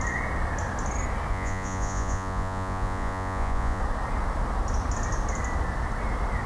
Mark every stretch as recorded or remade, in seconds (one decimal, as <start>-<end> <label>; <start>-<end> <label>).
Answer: 0.0-1.3 recorded; 1.3-3.8 remade; 3.8-6.5 recorded